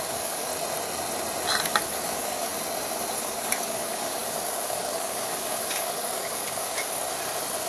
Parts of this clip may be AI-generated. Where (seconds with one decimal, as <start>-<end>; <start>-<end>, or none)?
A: 0.0-0.5; 1.6-2.5; 3.2-7.0